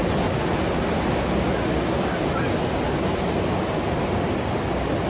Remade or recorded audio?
recorded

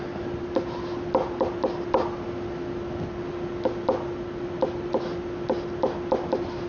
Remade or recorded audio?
recorded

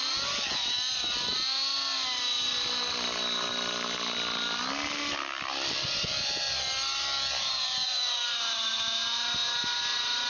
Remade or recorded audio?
recorded